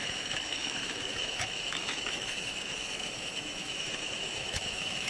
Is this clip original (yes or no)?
no